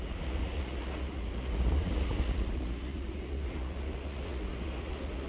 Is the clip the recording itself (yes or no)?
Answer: no